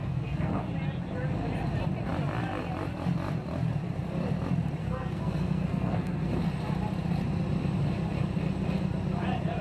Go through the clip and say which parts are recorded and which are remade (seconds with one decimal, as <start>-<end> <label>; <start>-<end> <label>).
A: 0.0-0.6 remade; 0.6-4.8 recorded; 4.8-6.3 remade; 6.3-9.6 recorded